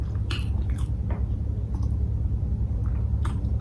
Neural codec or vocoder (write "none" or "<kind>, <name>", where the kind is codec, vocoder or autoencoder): none